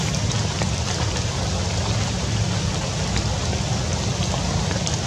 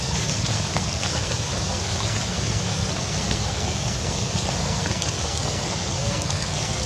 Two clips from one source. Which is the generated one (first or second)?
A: second